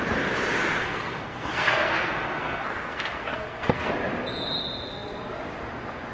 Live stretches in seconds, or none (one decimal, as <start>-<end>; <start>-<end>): 0.0-0.8; 3.9-6.1